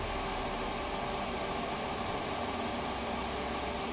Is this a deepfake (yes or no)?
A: no